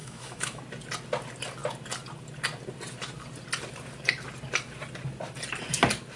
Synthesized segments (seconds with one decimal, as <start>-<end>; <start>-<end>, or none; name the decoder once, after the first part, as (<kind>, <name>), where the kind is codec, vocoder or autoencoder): 0.0-0.6 (autoencoder, DAC-VAE)